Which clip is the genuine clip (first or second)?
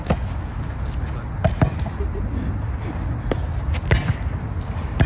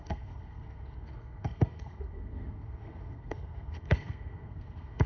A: first